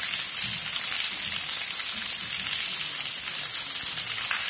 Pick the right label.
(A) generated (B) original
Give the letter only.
B